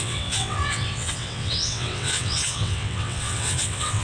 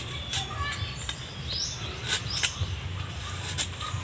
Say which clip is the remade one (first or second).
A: first